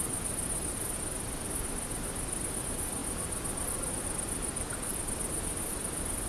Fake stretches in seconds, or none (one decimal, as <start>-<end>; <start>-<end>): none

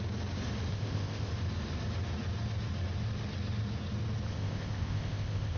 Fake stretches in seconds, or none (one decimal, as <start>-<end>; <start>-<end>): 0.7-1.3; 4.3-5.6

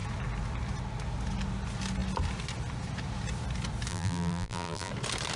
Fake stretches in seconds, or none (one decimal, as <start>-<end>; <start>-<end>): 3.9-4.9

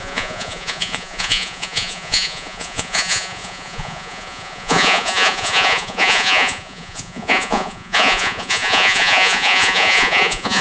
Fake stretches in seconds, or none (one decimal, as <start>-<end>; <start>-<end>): 0.0-10.6

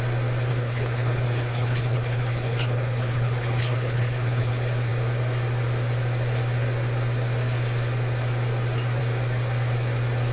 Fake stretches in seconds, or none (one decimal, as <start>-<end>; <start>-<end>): 0.5-4.5

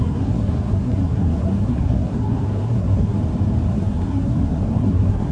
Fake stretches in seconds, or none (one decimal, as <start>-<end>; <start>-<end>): 0.0-3.2; 3.7-5.3